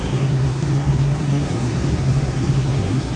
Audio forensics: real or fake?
fake